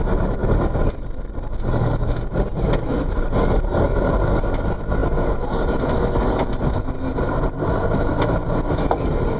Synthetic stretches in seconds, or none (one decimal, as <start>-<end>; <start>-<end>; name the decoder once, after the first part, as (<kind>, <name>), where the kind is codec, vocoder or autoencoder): none